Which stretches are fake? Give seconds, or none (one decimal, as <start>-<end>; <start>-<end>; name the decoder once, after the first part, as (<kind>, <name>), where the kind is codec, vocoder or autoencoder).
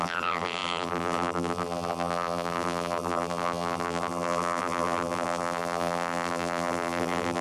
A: 0.0-7.4 (vocoder, BigVGAN v2)